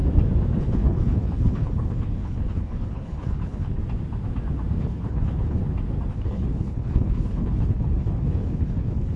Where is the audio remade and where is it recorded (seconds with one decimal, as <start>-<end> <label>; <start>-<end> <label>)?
0.0-0.6 recorded; 0.6-3.8 remade; 3.8-4.8 recorded; 4.8-5.6 remade; 5.6-6.1 recorded; 6.1-9.2 remade